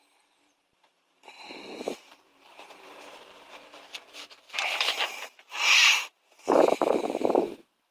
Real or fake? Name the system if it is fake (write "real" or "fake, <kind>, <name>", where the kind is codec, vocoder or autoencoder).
fake, vocoder, BigVGAN v2